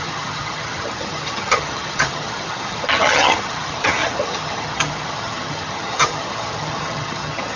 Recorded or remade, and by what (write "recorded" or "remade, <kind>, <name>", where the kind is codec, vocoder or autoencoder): remade, vocoder, HiFi-GAN